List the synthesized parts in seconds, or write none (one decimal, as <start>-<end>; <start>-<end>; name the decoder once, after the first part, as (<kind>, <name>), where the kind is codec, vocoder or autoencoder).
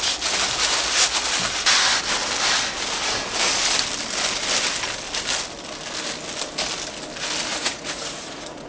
7.5-8.7 (vocoder, Vocos)